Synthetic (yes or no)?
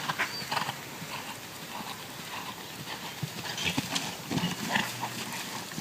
no